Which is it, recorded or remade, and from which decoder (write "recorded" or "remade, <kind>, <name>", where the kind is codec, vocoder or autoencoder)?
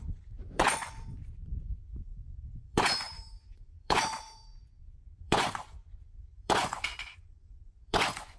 remade, vocoder, Vocos